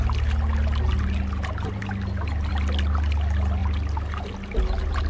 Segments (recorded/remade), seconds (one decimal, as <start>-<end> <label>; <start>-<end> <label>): 0.0-5.1 recorded

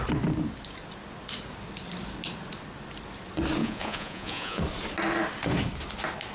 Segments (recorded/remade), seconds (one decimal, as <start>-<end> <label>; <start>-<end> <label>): 0.0-3.6 recorded; 3.6-4.6 remade; 4.6-6.3 recorded

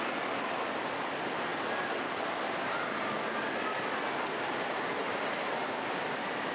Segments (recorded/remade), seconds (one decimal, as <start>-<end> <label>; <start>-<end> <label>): 0.0-6.5 recorded

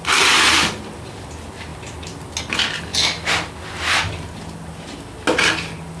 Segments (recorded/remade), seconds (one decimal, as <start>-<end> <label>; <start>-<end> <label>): 0.0-6.0 recorded

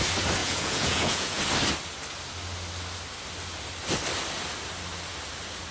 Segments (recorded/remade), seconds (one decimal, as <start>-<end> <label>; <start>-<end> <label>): 0.0-0.4 recorded; 0.4-1.4 remade; 1.4-5.7 recorded

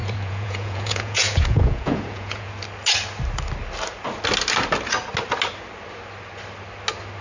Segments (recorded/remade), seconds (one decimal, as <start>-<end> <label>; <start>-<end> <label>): 0.0-2.5 remade; 2.5-7.2 recorded